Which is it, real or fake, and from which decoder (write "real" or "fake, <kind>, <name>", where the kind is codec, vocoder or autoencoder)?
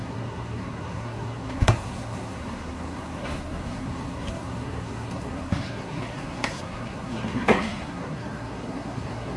fake, codec, SNAC